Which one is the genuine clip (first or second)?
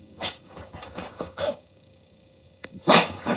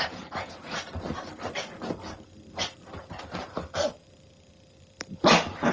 second